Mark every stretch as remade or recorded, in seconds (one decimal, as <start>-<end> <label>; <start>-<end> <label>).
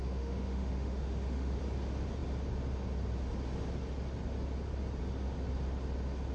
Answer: 0.0-1.6 remade; 1.6-6.3 recorded